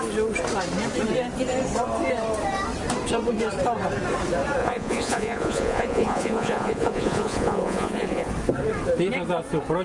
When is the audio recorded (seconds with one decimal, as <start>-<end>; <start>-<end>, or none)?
0.0-4.6; 8.3-9.8